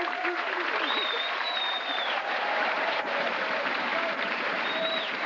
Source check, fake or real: fake